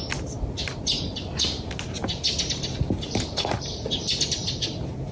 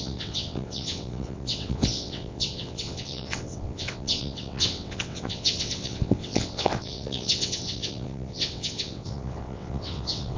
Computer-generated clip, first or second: second